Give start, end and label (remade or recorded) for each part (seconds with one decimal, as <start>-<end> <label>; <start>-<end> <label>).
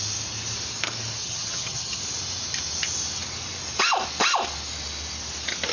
0.0-1.2 recorded; 1.2-2.0 remade; 2.0-5.7 recorded